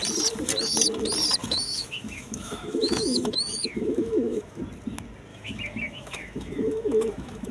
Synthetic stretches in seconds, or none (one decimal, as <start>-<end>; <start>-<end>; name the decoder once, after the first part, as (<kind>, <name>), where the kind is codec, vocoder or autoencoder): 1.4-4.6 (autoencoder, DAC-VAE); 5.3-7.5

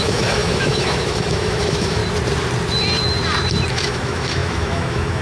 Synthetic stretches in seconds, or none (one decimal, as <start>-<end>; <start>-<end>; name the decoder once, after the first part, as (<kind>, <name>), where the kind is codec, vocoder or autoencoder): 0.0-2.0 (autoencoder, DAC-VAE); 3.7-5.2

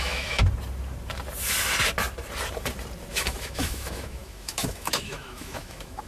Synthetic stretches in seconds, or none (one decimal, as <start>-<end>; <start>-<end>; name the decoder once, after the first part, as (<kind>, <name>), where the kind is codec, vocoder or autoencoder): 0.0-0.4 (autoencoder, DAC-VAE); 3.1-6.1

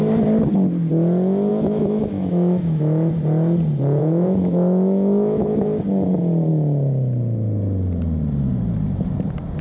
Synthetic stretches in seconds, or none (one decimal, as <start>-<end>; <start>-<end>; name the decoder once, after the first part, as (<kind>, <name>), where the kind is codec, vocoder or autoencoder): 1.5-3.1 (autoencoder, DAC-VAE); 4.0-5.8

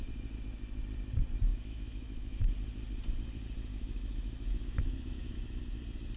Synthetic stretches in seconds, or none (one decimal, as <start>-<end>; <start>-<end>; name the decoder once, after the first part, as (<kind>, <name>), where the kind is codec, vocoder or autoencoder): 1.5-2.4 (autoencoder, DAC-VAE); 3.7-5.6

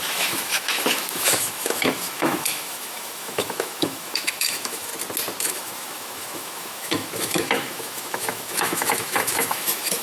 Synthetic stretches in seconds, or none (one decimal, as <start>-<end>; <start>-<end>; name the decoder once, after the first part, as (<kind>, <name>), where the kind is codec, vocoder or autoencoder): 0.0-4.9 (autoencoder, DAC-VAE); 5.4-10.0